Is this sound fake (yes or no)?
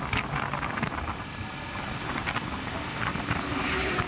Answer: no